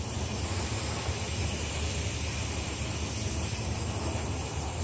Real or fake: real